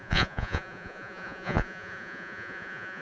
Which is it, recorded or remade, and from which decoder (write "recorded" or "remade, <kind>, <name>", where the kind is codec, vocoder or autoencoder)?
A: remade, vocoder, Vocos